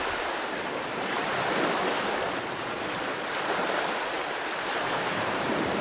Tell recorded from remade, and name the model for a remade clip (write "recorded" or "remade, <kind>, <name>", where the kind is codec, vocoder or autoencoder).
remade, vocoder, BigVGAN v2